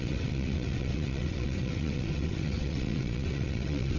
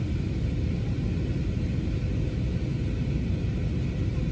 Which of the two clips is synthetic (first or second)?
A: first